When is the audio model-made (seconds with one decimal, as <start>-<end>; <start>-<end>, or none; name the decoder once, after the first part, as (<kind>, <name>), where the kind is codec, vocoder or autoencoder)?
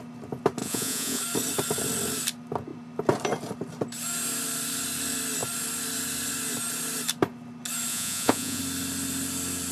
0.6-1.2 (vocoder, Vocos); 7.9-8.6